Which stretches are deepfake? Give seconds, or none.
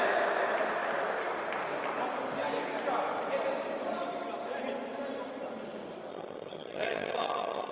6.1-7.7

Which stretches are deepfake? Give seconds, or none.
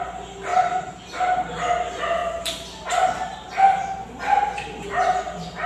none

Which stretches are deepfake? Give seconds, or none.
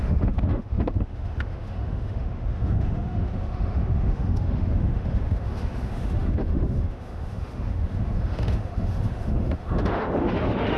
0.0-10.8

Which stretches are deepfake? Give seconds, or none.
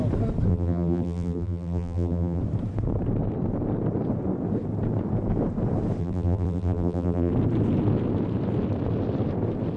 0.5-2.4; 6.0-7.3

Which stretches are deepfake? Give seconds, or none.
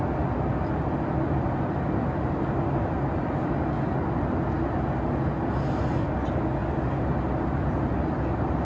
none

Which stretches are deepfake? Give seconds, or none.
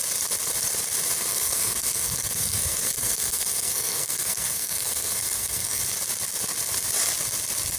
1.3-5.8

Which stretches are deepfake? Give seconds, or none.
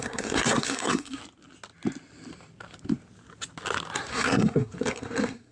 0.0-1.2; 4.1-5.5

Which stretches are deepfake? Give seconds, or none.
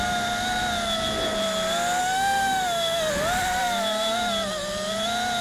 2.0-3.1